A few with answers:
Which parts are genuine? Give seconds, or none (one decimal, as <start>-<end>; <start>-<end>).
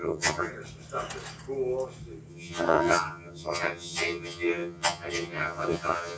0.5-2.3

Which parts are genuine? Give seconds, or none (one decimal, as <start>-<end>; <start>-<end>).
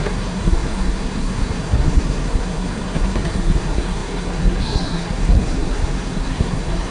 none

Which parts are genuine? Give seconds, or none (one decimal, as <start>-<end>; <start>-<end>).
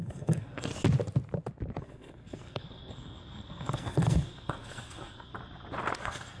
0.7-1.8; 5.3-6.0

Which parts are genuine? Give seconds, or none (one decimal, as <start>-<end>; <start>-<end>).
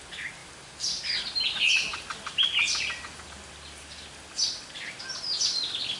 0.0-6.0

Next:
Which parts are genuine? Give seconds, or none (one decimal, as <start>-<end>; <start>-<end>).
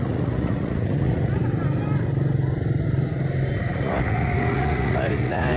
1.4-3.6